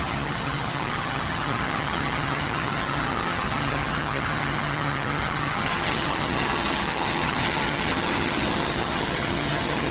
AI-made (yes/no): yes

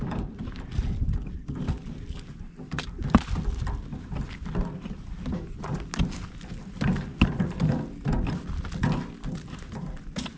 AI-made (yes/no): no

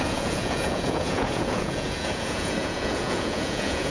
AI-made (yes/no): yes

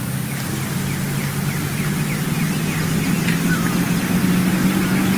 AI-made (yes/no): no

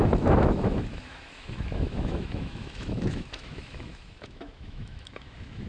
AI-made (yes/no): yes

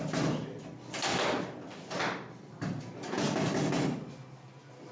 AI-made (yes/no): no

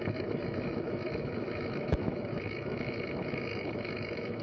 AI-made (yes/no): yes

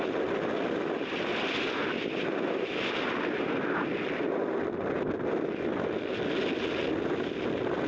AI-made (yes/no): no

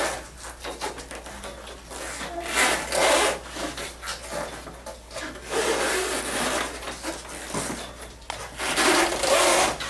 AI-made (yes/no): no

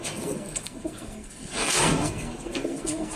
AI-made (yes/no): yes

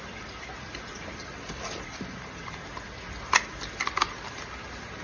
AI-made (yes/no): yes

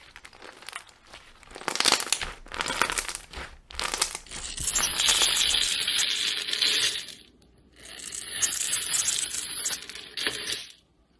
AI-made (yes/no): no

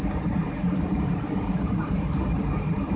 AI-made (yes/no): yes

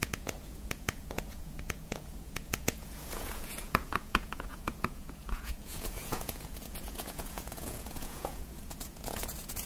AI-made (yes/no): yes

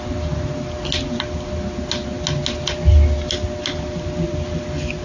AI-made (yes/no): no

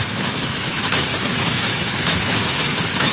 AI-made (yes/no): yes